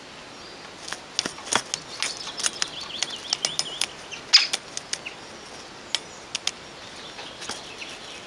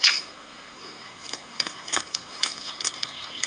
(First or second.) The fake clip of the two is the second